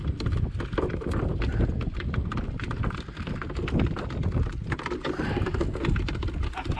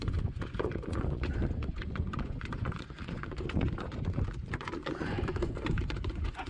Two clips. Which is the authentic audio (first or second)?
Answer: first